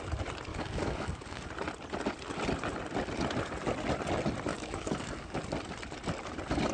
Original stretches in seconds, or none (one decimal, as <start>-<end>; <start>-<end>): 0.0-0.5; 1.5-4.5; 5.4-6.7